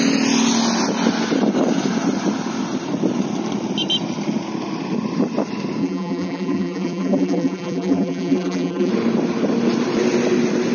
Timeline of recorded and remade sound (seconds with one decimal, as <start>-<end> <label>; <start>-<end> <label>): 0.0-5.8 recorded; 5.8-8.9 remade; 8.9-10.7 recorded